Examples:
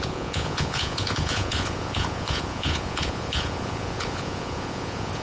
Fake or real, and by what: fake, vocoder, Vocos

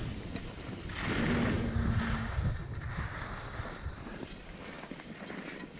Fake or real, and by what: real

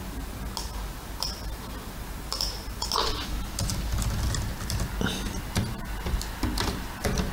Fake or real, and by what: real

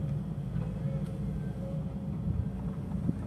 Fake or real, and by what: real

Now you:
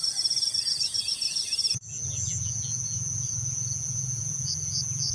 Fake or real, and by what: fake, vocoder, Vocos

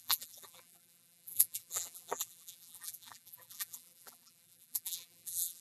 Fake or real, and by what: fake, vocoder, BigVGAN v2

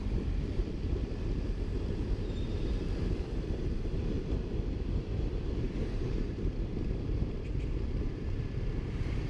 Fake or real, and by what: fake, vocoder, BigVGAN v2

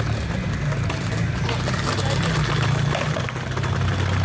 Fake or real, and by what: real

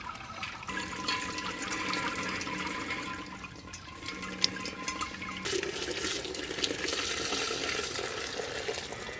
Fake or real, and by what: real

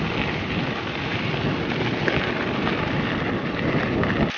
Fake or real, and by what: real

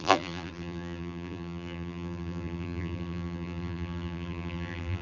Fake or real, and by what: fake, vocoder, BigVGAN v2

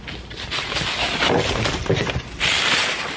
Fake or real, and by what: real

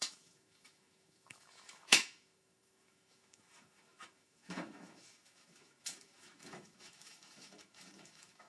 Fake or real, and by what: fake, autoencoder, DAC-VAE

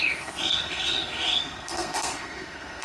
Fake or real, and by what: fake, codec, SNAC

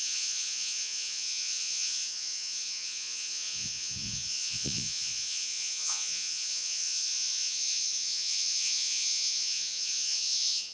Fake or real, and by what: fake, vocoder, Vocos